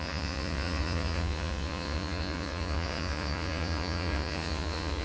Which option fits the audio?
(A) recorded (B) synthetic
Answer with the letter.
B